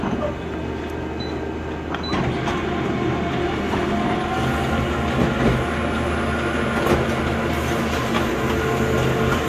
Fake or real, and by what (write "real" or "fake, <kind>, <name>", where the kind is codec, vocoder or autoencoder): real